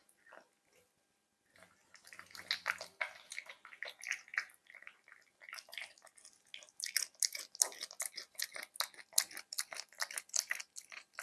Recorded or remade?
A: recorded